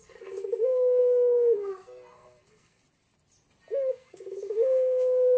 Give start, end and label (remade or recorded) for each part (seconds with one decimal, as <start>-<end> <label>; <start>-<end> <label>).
0.0-2.8 remade; 2.8-3.9 recorded; 3.9-5.4 remade